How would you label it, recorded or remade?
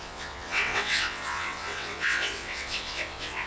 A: remade